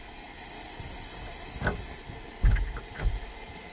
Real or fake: real